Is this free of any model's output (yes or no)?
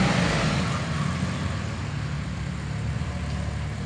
yes